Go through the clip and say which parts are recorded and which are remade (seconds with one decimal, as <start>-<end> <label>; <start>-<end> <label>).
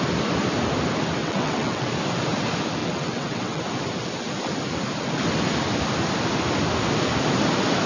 0.0-1.2 recorded; 1.2-1.9 remade; 1.9-2.8 recorded; 2.8-3.6 remade; 3.6-7.9 recorded